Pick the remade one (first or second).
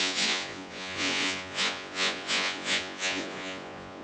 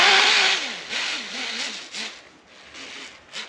first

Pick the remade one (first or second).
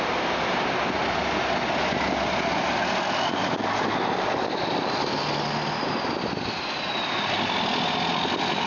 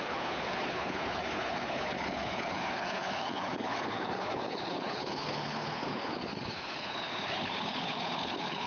second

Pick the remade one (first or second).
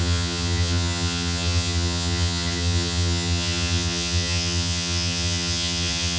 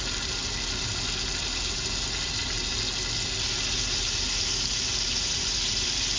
first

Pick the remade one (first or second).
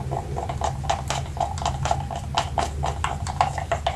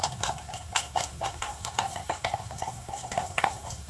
second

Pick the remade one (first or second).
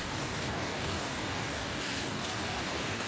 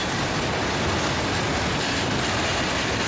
first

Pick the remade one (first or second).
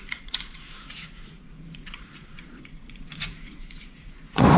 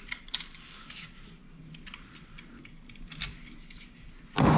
first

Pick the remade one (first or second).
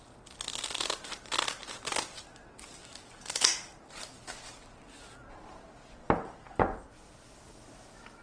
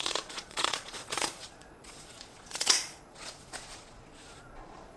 second